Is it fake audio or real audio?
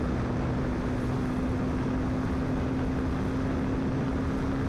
real